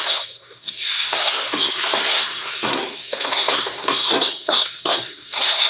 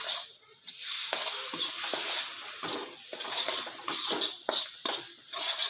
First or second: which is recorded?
second